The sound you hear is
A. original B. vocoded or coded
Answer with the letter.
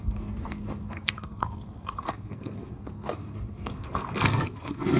B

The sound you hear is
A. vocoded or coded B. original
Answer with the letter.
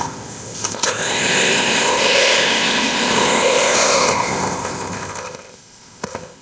A